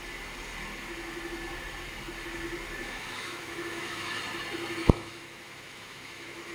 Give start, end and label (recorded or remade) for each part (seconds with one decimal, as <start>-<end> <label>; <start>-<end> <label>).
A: 0.0-2.8 recorded; 2.8-4.2 remade; 4.2-4.8 recorded; 4.8-6.5 remade